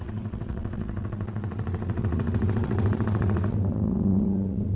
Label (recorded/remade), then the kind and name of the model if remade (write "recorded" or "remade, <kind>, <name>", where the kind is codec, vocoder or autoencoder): remade, vocoder, WaveNeXt